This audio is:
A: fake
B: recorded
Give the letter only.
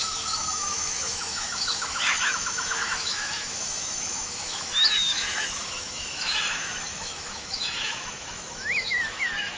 A